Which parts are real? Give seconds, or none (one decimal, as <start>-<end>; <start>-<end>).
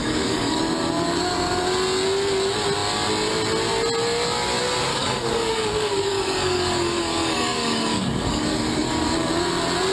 0.6-4.9; 9.3-9.9